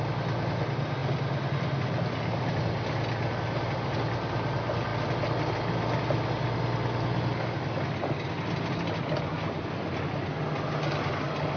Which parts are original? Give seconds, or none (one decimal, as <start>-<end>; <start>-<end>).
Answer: 0.0-11.6